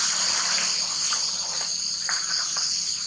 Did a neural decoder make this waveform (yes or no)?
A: no